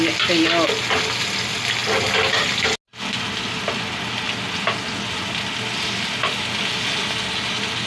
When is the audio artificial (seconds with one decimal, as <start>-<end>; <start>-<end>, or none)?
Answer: none